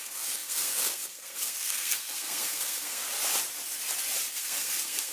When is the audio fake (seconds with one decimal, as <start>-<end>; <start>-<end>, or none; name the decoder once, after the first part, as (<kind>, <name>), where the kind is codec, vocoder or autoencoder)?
0.0-3.0 (codec, SNAC); 4.3-5.1